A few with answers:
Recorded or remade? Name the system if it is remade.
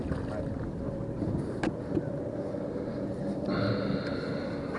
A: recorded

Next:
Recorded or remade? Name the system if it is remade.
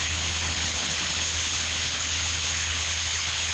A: remade, codec, HILCodec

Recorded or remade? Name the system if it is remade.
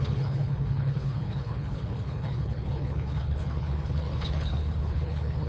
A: remade, codec, HILCodec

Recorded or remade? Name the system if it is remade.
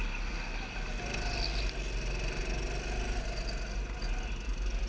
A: recorded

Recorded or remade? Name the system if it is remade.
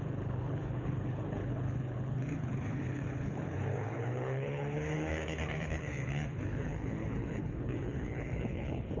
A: remade, codec, HILCodec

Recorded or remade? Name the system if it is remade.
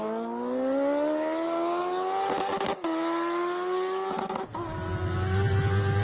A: recorded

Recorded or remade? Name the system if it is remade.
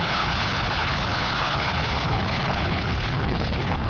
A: remade, codec, HILCodec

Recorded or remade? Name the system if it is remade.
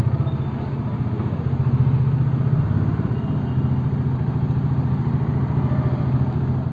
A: recorded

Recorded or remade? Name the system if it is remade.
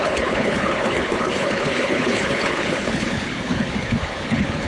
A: remade, codec, HILCodec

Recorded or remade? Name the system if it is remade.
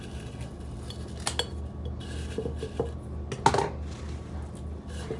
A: recorded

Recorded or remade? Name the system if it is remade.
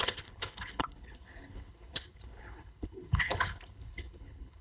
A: remade, codec, HILCodec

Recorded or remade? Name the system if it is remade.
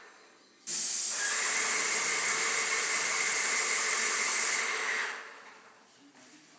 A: recorded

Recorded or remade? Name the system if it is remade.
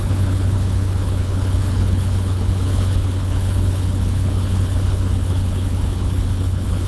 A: remade, codec, HILCodec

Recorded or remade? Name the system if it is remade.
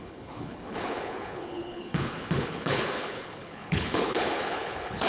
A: remade, codec, HILCodec